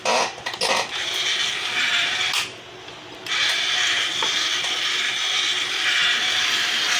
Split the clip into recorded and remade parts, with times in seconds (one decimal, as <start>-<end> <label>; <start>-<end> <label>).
0.0-7.0 recorded